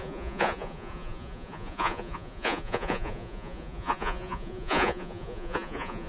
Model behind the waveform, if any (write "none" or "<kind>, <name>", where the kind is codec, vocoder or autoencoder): vocoder, Vocos